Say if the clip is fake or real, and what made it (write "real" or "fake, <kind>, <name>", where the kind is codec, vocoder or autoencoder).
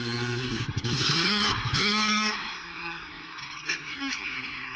fake, codec, SNAC